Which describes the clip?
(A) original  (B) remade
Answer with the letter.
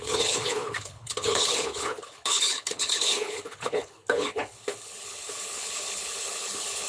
B